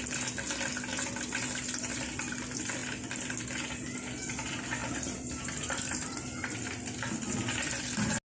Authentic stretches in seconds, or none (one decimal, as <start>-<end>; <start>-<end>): 0.0-0.9; 2.4-4.8; 6.2-8.3